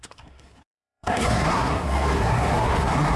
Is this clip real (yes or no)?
no